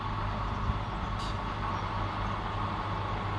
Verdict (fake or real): real